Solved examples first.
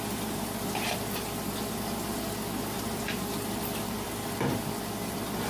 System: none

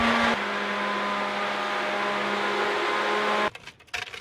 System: none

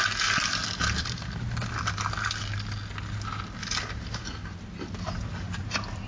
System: none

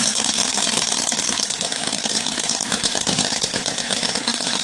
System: codec, SNAC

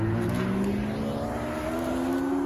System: none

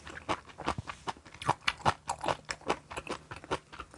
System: none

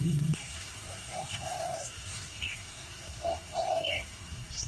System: codec, SNAC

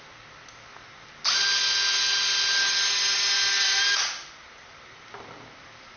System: none